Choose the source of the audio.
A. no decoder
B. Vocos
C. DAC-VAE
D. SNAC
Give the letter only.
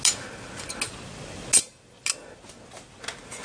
A